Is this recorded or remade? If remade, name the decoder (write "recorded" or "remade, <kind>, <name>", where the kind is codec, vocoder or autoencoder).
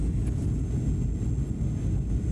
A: recorded